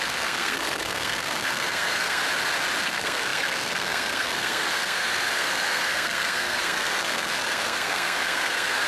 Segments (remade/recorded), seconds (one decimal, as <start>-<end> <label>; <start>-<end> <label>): 0.0-2.2 remade; 2.2-2.8 recorded; 2.8-8.9 remade